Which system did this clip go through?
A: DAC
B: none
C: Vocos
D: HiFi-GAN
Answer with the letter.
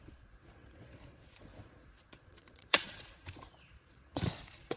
C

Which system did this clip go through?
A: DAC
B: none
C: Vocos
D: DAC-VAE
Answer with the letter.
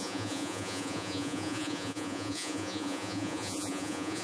C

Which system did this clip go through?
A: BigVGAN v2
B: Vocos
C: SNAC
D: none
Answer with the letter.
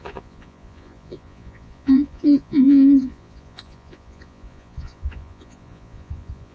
B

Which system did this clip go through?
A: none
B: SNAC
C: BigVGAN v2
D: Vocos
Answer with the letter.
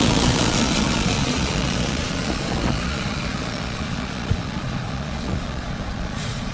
D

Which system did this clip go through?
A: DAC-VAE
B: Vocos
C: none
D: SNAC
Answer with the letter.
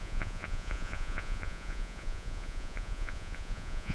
B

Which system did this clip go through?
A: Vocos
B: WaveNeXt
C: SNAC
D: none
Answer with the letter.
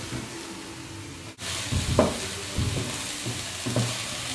D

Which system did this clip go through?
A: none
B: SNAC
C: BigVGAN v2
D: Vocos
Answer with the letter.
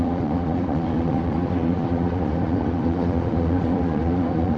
D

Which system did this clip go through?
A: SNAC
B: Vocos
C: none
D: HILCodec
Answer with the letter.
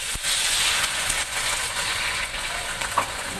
B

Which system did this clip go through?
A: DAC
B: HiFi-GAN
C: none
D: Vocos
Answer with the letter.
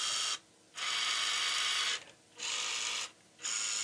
C